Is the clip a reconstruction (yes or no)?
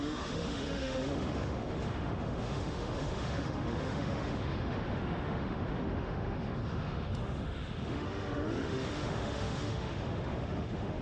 yes